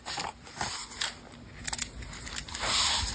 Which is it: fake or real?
real